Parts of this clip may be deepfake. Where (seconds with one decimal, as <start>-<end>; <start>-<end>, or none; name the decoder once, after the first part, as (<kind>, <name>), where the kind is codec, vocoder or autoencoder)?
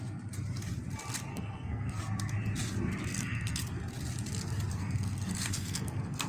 1.3-2.0 (codec, SNAC); 3.1-3.6; 4.7-6.3